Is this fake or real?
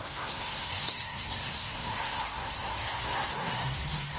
fake